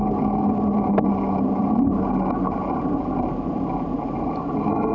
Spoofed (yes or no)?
no